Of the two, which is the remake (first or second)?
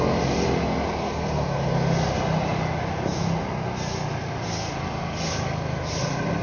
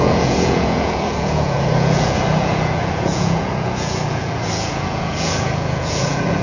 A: second